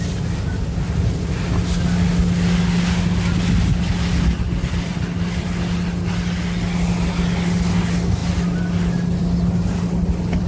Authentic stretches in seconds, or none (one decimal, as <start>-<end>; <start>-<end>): 0.0-10.5